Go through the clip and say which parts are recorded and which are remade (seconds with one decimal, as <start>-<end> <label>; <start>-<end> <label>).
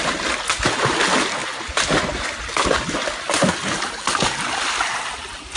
0.0-5.6 recorded